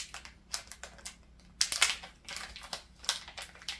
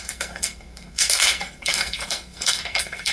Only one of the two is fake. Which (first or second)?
second